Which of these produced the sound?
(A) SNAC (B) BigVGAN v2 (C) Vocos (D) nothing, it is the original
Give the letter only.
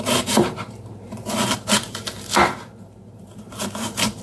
B